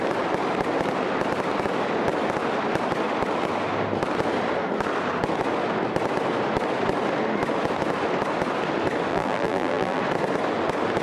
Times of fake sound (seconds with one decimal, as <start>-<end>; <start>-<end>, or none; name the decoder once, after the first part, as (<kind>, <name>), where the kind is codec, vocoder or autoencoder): 9.1-10.0 (vocoder, BigVGAN v2)

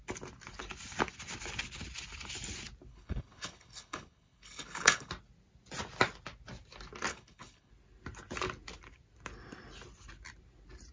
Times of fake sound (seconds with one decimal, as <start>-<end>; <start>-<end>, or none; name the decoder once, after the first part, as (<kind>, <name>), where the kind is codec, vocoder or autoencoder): 2.9-5.1 (codec, HILCodec); 7.1-7.7

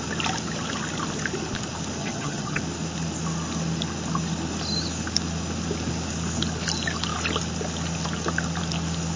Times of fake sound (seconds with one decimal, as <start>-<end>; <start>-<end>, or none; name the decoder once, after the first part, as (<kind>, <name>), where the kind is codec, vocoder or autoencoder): 2.0-2.6 (vocoder, HiFi-GAN)

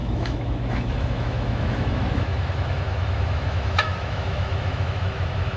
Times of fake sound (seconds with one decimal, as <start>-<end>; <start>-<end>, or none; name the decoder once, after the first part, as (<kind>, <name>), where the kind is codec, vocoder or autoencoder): 0.0-5.6 (autoencoder, DAC-VAE)